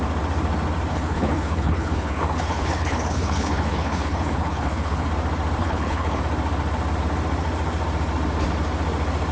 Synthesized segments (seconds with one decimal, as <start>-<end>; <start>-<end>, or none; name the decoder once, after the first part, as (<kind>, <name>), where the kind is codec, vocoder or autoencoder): 0.9-5.1 (codec, HILCodec); 5.6-6.2

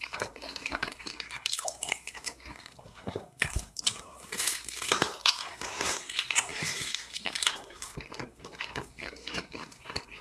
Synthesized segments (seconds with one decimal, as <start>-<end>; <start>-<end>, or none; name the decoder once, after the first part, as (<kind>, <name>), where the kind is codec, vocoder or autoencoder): 0.0-10.2 (codec, SNAC)

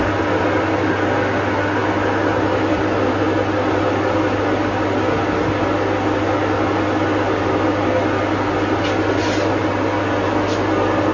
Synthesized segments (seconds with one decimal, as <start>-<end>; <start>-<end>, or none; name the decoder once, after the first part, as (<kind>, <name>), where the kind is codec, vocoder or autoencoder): none

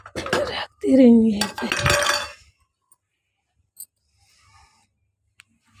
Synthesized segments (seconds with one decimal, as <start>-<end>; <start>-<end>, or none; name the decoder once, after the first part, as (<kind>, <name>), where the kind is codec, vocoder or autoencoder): none